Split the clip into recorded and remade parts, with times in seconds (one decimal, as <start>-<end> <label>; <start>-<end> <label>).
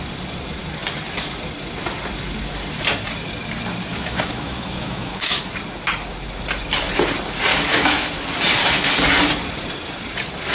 0.0-3.9 recorded; 3.9-5.4 remade; 5.4-7.5 recorded; 7.5-8.1 remade; 8.1-10.5 recorded